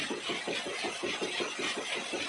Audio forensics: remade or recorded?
recorded